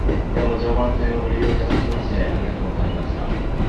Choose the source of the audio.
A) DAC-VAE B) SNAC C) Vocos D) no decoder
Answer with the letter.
D